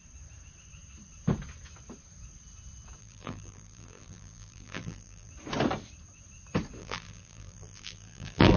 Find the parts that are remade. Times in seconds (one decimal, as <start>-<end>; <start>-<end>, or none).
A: 3.0-5.3; 6.8-8.6